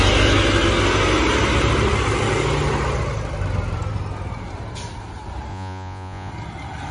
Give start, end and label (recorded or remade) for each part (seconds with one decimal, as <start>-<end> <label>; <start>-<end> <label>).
0.0-5.5 recorded; 5.5-6.3 remade; 6.3-6.9 recorded